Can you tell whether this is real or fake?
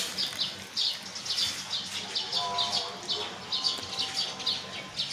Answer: real